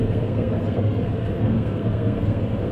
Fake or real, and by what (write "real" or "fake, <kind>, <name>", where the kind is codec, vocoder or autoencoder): fake, codec, SNAC